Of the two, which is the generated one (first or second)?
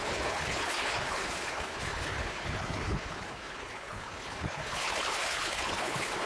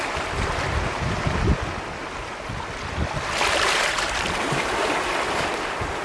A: first